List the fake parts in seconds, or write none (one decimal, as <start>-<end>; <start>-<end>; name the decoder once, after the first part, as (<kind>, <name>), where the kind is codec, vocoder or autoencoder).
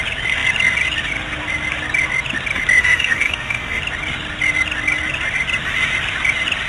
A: 2.8-3.8 (autoencoder, DAC-VAE)